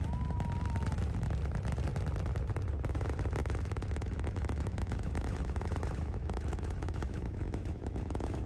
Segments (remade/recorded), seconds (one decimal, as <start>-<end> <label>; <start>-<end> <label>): 0.0-3.4 recorded; 3.4-8.5 remade